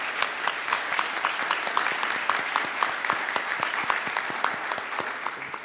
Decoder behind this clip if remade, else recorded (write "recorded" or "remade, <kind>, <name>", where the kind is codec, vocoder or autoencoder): remade, vocoder, BigVGAN v2